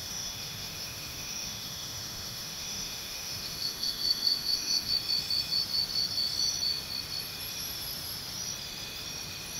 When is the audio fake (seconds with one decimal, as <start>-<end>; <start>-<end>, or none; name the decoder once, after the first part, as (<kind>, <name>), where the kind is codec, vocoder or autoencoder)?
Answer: 0.0-4.9 (autoencoder, DAC-VAE)